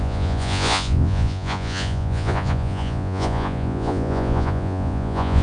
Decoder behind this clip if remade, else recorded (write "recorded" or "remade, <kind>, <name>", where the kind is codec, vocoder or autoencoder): remade, vocoder, Vocos